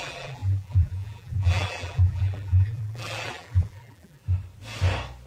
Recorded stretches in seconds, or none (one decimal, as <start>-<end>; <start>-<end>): 4.2-5.3